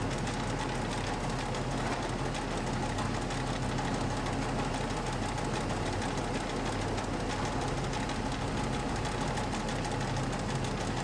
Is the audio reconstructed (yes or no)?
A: no